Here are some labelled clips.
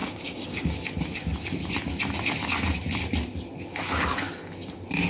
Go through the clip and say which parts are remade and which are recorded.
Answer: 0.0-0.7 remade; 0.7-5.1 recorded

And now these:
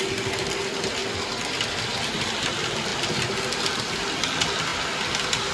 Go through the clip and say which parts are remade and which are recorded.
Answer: 0.0-5.5 recorded

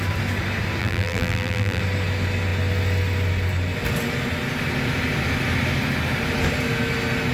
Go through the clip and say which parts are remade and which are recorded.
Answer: 0.0-0.8 recorded; 0.8-1.8 remade; 1.8-7.3 recorded

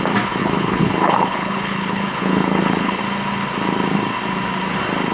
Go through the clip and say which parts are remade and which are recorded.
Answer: 0.0-0.4 recorded; 0.4-3.0 remade; 3.0-5.1 recorded

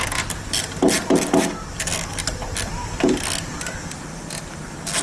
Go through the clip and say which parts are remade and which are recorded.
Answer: 0.0-5.0 recorded

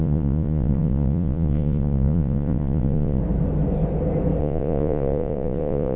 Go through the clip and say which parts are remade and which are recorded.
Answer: 0.0-3.2 remade; 3.2-4.4 recorded; 4.4-6.0 remade